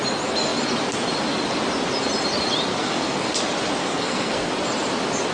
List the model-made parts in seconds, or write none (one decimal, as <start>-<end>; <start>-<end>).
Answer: 2.7-3.3; 3.8-4.5